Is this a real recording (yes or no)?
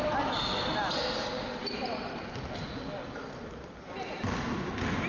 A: yes